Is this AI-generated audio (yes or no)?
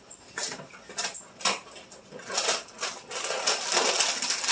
no